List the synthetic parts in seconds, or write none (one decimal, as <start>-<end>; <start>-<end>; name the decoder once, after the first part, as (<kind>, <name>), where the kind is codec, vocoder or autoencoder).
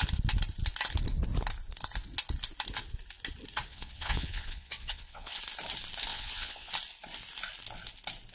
3.7-5.4 (vocoder, WaveNeXt); 6.1-6.7